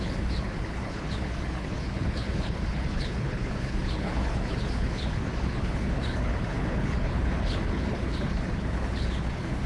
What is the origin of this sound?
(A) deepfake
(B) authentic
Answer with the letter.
A